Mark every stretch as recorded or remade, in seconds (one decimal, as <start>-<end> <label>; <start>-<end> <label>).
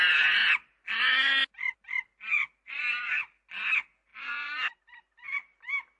0.0-6.0 recorded